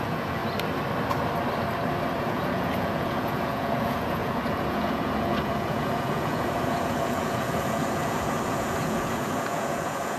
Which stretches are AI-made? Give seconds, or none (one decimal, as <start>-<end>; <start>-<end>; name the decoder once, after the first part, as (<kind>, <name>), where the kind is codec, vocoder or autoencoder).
0.0-0.4 (vocoder, Vocos); 2.2-10.2